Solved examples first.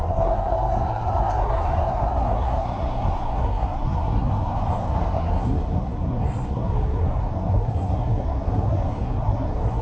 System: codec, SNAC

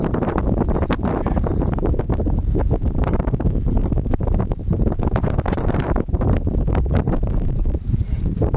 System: vocoder, BigVGAN v2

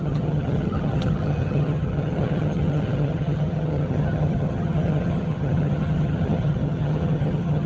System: vocoder, HiFi-GAN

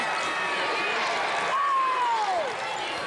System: none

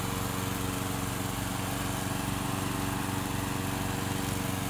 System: none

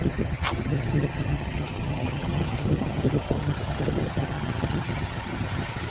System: vocoder, HiFi-GAN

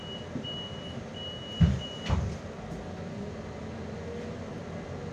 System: none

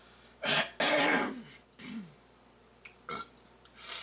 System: none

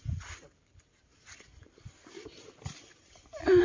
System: none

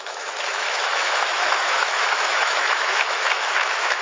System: autoencoder, DAC-VAE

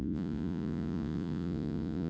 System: vocoder, Vocos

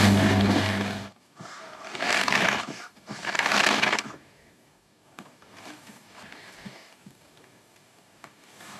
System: codec, DAC